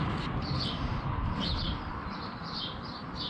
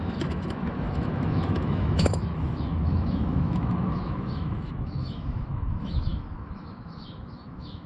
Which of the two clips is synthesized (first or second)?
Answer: second